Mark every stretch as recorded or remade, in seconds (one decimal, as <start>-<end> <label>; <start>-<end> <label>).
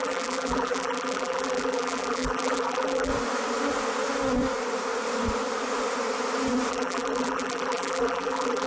0.0-3.1 remade; 3.1-6.7 recorded; 6.7-8.7 remade